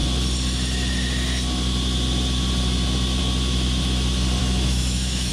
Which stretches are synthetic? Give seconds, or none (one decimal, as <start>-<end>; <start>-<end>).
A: 4.4-5.3

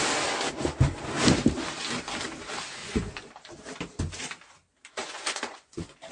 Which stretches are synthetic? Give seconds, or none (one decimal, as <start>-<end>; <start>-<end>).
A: 2.8-3.3; 5.0-6.1

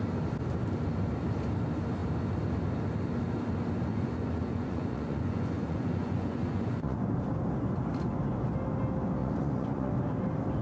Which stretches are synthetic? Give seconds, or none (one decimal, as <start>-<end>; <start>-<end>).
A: 3.9-7.1; 9.2-9.9

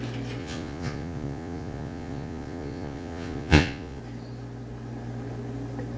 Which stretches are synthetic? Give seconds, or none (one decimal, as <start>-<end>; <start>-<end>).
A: 0.4-4.0

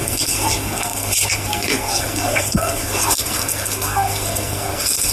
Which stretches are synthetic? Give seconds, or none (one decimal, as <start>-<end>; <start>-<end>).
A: 0.0-5.1

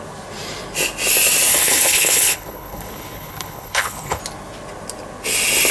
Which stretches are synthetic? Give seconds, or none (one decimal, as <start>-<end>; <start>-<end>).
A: 1.5-4.2

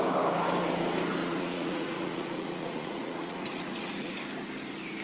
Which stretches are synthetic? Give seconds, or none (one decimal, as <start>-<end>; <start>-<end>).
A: 1.2-4.2